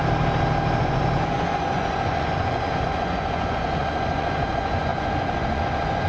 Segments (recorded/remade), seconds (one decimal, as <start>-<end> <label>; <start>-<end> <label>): 0.0-0.8 recorded; 0.8-6.1 remade